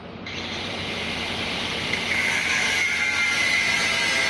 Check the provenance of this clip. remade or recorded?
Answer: remade